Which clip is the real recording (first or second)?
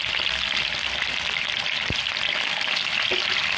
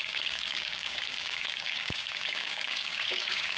first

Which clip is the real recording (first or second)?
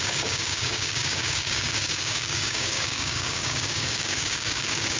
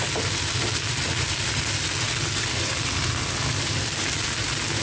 second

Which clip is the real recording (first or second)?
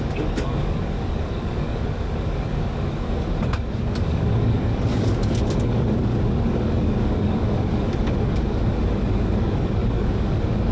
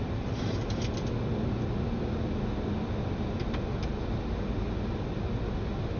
second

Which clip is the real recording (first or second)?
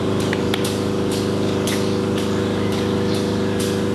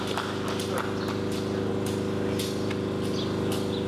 second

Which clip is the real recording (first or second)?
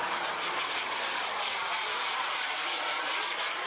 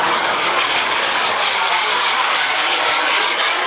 first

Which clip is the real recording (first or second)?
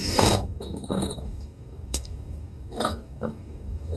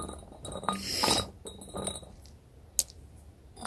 second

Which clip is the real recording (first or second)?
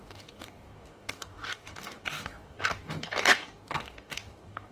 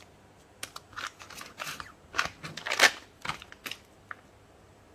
second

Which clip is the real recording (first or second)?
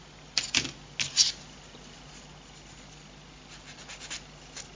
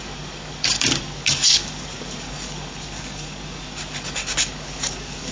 first